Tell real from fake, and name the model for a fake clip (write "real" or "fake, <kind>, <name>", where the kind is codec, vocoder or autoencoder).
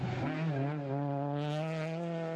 real